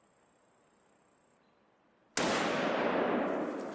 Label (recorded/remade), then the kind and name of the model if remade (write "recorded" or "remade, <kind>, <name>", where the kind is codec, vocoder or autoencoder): recorded